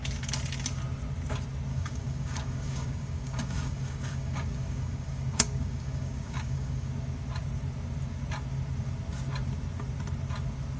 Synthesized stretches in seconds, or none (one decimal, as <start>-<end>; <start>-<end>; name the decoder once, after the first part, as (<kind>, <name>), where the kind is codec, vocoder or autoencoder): 1.7-6.9 (codec, DAC)